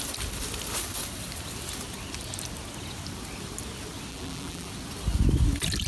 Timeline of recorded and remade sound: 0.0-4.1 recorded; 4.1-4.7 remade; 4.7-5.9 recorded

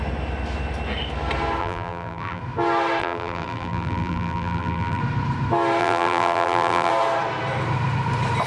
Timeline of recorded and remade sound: 0.0-1.6 recorded; 1.6-2.4 remade; 2.4-3.0 recorded; 3.0-5.0 remade; 5.0-5.8 recorded; 5.8-6.9 remade; 6.9-8.5 recorded

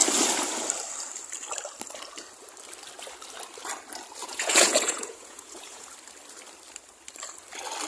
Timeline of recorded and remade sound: 0.0-4.2 recorded; 4.2-5.9 remade; 5.9-7.9 recorded